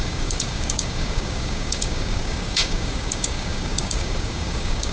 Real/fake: fake